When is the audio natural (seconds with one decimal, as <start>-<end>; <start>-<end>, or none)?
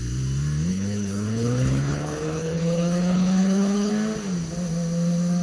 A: 0.0-0.7; 3.9-5.4